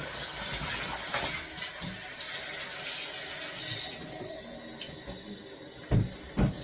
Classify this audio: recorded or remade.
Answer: recorded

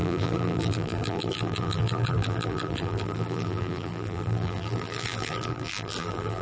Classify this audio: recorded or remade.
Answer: remade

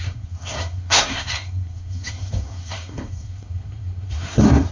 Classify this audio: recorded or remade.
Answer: remade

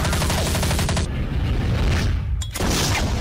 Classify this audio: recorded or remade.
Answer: recorded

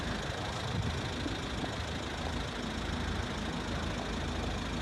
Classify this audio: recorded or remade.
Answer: recorded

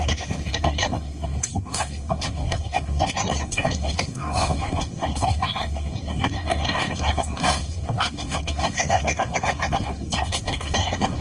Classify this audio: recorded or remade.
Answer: remade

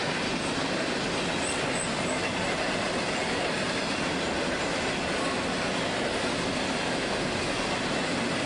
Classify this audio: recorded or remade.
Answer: recorded